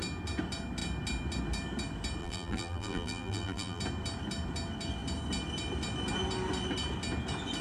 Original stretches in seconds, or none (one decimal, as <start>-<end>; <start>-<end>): 0.0-2.2; 3.8-7.6